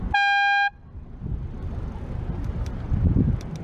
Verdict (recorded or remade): recorded